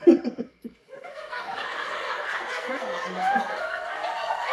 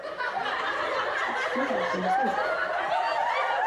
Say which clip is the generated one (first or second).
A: first